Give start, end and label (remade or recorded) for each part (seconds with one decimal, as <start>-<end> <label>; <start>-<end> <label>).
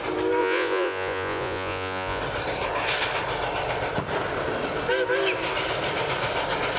0.0-0.4 recorded; 0.4-2.2 remade; 2.2-6.8 recorded